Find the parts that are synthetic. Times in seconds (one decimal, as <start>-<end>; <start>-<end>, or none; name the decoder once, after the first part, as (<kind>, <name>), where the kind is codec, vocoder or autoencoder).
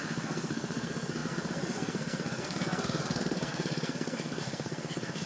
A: 0.0-5.3 (codec, SNAC)